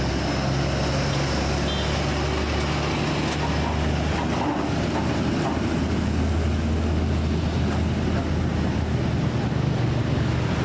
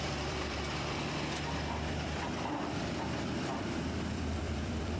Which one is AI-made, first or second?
second